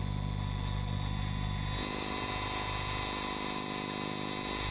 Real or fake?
real